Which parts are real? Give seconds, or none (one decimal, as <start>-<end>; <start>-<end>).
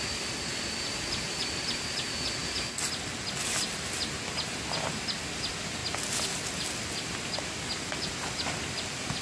0.0-9.2